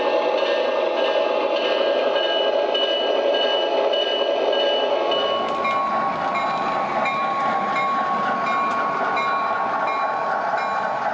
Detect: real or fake real